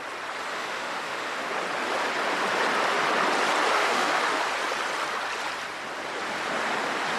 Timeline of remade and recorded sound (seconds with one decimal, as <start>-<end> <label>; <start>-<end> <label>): 0.0-0.5 recorded; 0.5-1.5 remade; 1.5-3.7 recorded; 3.7-4.4 remade; 4.4-7.2 recorded